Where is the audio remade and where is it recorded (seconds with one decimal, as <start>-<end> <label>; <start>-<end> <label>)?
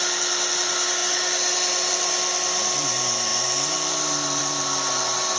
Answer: 0.0-5.4 recorded